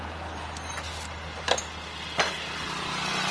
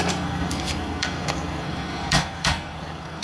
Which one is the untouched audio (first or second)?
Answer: first